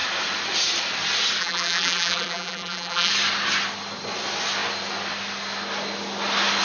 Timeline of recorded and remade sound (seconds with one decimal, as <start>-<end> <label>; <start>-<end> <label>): 0.0-1.4 recorded; 1.4-3.1 remade; 3.1-6.6 recorded